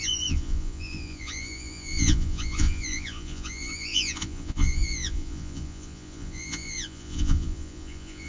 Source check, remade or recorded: remade